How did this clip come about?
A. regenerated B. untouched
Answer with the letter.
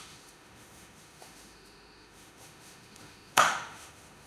A